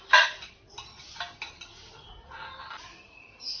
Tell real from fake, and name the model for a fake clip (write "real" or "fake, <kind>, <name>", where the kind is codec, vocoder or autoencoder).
real